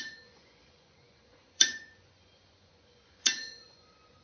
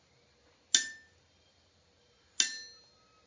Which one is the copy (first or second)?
first